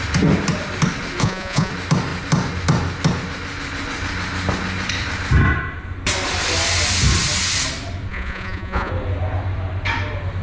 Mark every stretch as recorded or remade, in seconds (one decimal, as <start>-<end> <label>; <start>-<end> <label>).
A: 0.0-1.2 recorded; 1.2-1.7 remade; 1.7-8.1 recorded; 8.1-8.9 remade; 8.9-10.4 recorded